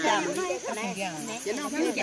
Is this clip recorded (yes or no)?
yes